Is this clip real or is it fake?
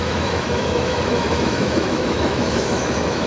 fake